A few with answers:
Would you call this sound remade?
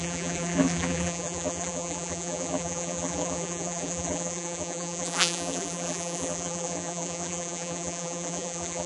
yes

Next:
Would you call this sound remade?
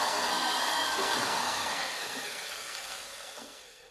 yes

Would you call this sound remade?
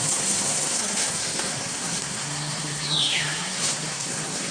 yes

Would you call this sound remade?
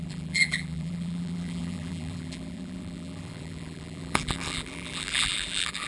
yes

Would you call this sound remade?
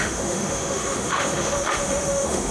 yes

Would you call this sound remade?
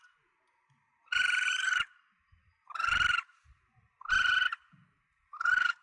yes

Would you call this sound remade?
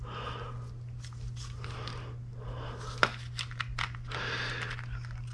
no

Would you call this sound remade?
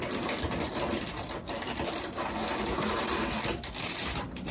no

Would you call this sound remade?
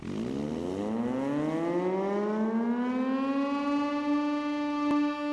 no